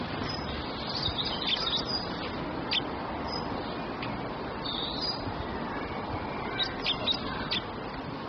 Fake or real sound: real